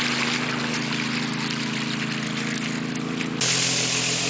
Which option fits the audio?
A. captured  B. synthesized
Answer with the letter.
A